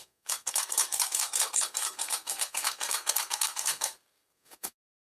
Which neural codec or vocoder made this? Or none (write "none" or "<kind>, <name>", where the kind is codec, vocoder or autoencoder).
codec, SNAC